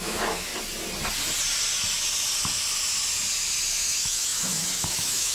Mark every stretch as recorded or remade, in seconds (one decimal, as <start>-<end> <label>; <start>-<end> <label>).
0.0-0.5 remade; 0.5-3.7 recorded; 3.7-5.3 remade